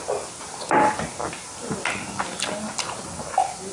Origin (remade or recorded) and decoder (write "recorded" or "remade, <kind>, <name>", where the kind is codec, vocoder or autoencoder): recorded